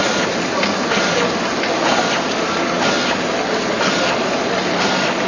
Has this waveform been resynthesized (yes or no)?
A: no